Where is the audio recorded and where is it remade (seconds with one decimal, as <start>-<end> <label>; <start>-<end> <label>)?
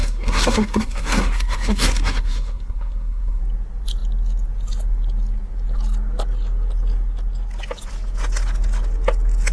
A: 0.0-3.4 remade; 3.4-9.5 recorded